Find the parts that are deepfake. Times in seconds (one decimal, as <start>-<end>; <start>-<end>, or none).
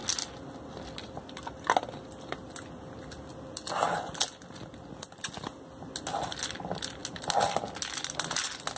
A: none